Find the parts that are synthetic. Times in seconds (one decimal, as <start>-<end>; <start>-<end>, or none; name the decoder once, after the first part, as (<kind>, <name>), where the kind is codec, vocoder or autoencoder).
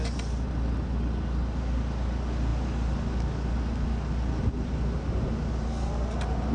none